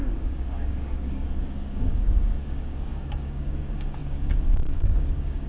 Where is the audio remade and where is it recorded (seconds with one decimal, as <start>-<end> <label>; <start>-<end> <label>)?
0.0-5.5 remade